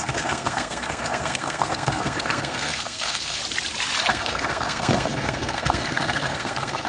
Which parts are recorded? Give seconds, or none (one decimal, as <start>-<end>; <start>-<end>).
3.4-4.1